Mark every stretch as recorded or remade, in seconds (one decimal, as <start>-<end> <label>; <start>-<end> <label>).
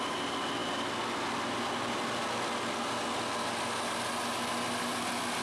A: 0.0-5.4 recorded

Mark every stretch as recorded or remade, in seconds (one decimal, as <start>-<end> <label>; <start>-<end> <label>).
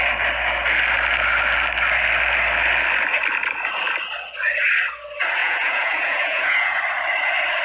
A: 0.0-5.4 recorded; 5.4-6.8 remade; 6.8-7.6 recorded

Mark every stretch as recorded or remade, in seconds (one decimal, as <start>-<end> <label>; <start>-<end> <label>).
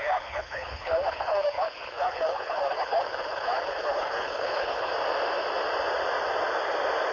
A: 0.0-4.9 remade; 4.9-7.1 recorded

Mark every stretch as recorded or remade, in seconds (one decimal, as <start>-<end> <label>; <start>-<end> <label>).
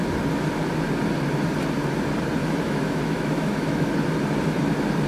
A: 0.0-2.4 recorded; 2.4-3.9 remade; 3.9-5.1 recorded